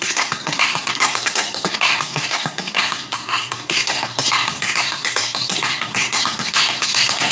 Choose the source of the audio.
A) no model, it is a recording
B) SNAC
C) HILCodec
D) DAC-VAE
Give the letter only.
B